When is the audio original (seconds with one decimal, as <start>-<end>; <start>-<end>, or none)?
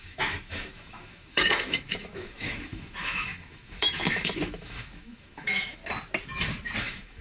5.8-6.8